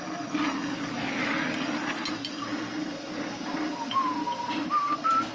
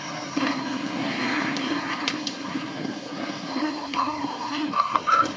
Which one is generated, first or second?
second